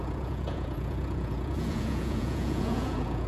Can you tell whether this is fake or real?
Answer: fake